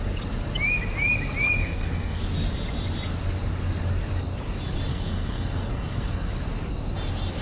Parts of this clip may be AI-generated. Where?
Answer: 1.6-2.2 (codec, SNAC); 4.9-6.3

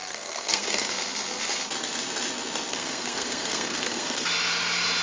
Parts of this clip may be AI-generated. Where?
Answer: 0.0-0.9 (codec, SNAC); 2.7-4.3